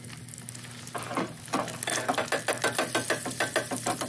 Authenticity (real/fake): real